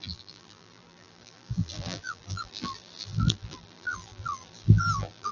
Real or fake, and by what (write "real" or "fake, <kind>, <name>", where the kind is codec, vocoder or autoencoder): fake, vocoder, BigVGAN v2